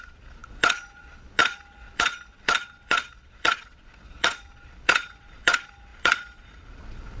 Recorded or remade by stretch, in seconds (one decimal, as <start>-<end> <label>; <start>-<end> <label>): 0.0-7.2 remade